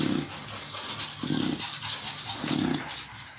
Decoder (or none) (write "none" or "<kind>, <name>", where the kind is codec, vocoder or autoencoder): none